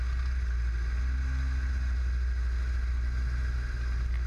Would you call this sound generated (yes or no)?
no